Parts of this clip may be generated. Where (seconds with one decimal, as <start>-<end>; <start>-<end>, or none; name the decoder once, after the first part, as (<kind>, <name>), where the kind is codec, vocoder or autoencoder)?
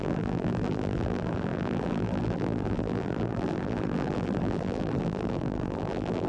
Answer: 0.0-6.3 (vocoder, BigVGAN v2)